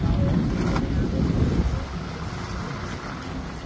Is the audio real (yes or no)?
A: yes